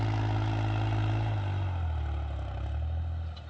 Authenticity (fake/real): real